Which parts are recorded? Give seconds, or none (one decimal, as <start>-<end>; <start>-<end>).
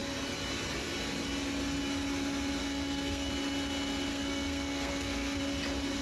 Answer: 0.0-2.6; 3.3-4.1; 5.4-6.0